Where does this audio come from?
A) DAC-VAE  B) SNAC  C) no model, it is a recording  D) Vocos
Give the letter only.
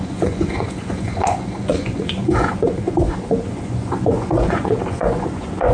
D